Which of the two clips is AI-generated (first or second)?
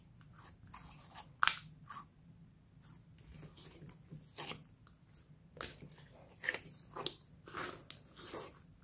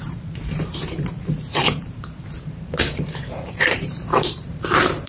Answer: second